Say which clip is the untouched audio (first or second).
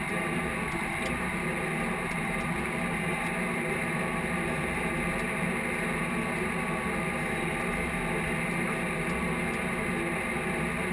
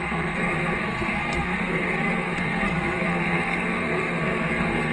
first